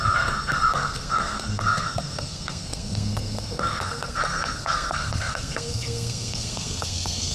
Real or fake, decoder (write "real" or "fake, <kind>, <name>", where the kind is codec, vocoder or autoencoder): fake, codec, SNAC